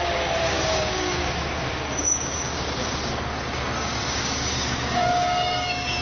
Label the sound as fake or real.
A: fake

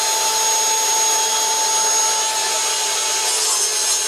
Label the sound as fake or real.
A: real